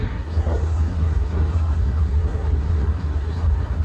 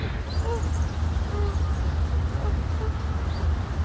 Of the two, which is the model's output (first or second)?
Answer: first